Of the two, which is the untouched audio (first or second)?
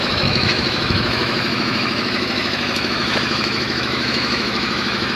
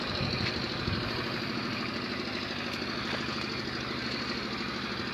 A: second